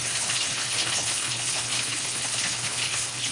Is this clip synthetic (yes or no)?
yes